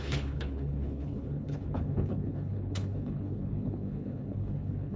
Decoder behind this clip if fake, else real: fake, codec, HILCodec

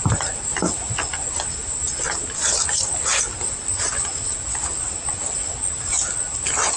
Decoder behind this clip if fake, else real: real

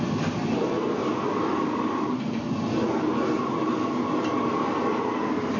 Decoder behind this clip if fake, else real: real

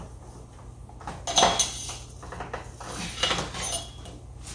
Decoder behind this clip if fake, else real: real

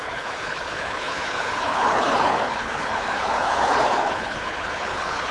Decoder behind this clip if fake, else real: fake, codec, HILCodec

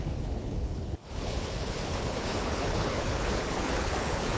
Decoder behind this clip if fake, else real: fake, codec, HILCodec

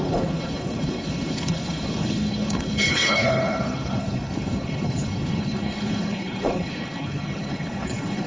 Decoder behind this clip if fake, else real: fake, codec, HILCodec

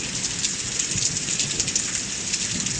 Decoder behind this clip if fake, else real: real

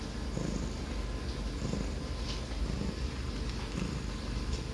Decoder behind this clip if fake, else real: real